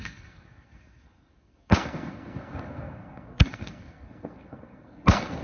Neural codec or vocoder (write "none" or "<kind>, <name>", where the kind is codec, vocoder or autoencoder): codec, SNAC